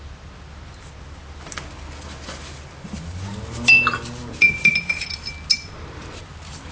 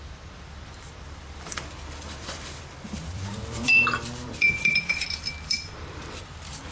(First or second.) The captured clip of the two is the first